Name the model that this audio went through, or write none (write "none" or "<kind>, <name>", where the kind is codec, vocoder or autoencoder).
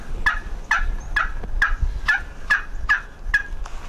none